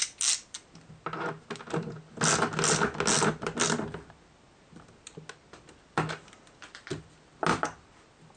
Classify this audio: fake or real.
real